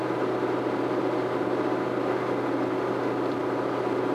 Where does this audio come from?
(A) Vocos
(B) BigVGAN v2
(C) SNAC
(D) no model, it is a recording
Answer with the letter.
D